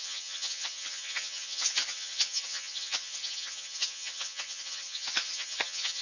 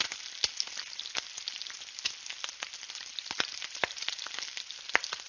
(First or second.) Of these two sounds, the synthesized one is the first